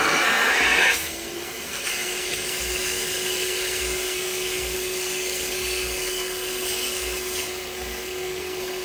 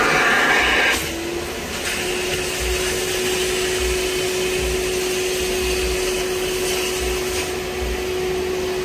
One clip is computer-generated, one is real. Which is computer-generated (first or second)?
first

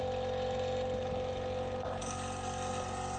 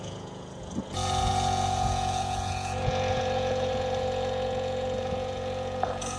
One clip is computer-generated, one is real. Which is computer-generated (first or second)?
second